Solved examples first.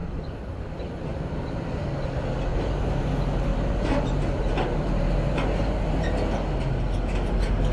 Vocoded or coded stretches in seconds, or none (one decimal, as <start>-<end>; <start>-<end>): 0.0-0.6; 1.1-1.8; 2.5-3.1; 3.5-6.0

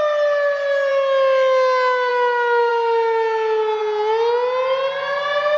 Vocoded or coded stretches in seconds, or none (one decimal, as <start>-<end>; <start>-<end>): none

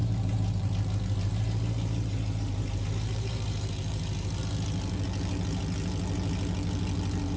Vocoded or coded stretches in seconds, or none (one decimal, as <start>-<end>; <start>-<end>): 0.0-4.4